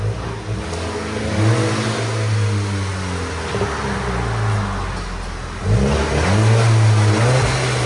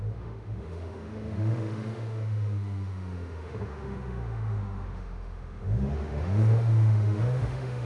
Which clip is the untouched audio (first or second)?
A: first